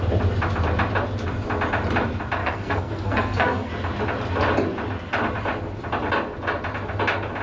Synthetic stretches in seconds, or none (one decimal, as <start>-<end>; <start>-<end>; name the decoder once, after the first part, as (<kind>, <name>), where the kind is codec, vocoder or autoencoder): 2.4-3.7 (codec, SNAC)